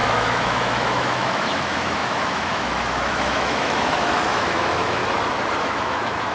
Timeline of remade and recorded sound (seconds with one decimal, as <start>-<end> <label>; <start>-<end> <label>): 0.0-5.0 remade; 5.0-5.6 recorded; 5.6-6.3 remade